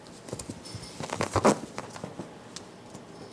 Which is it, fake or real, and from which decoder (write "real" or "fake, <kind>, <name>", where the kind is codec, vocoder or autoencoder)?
real